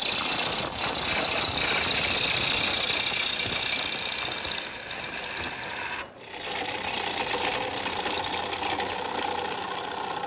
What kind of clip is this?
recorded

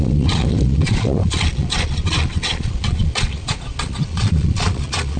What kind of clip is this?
remade